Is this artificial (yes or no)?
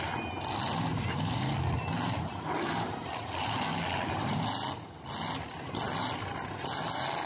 no